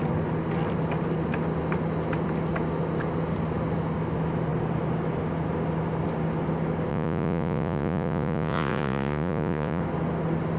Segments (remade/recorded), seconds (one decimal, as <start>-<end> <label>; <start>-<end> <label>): 0.0-6.9 recorded; 6.9-9.8 remade; 9.8-10.6 recorded